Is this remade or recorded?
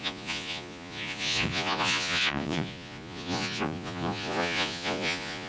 remade